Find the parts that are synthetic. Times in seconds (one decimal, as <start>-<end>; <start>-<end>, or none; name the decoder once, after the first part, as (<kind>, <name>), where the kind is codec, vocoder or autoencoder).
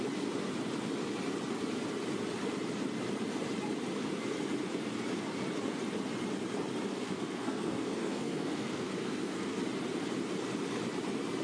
6.9-9.6 (codec, SNAC)